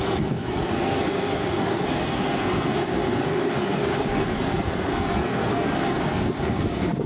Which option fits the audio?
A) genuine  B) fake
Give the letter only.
B